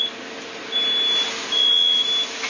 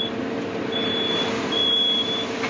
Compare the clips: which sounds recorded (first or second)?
first